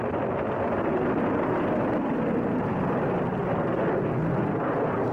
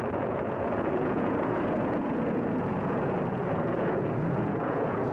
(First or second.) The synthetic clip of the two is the second